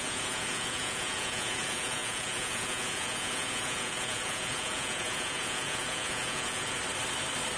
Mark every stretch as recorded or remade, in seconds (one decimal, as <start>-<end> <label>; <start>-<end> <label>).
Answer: 0.0-6.8 remade; 6.8-7.6 recorded